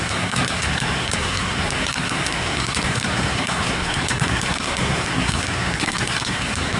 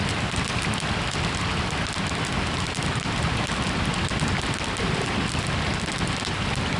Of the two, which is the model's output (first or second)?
first